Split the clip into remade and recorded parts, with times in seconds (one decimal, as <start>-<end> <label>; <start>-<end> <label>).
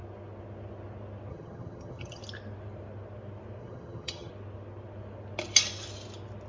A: 0.0-1.3 recorded; 1.3-2.2 remade; 2.2-3.6 recorded; 3.6-4.3 remade; 4.3-6.5 recorded